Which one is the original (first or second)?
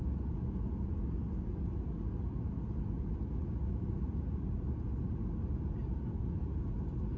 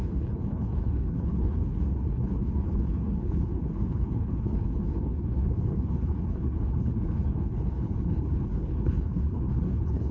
first